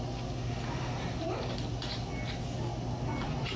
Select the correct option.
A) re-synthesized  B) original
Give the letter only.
B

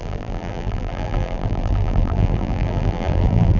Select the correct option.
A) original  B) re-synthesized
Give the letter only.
B